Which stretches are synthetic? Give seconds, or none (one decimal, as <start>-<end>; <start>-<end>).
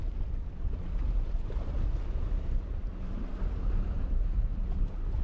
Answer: none